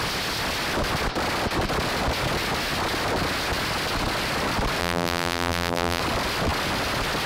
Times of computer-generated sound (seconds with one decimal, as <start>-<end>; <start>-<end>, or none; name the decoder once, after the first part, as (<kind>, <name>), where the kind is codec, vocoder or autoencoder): 4.8-6.0 (vocoder, BigVGAN v2)